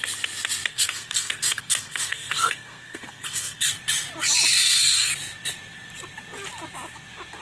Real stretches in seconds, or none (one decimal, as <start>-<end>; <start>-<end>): 0.0-0.7; 3.7-4.6; 5.1-7.4